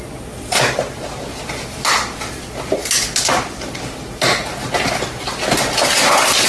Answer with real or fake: real